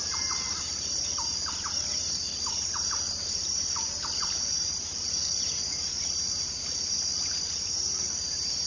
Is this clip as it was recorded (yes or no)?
no